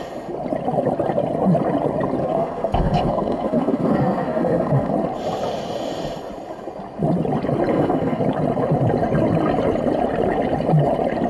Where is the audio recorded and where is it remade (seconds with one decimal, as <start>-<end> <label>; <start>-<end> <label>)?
0.0-2.2 recorded; 2.2-4.9 remade; 4.9-7.7 recorded; 7.7-8.2 remade; 8.2-11.3 recorded